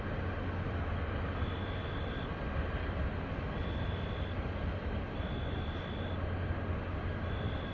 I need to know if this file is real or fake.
real